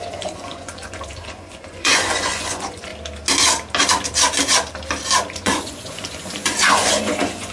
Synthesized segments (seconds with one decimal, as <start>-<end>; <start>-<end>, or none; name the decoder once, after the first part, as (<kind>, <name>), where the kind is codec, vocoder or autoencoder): 0.0-2.9 (vocoder, Vocos); 5.3-7.5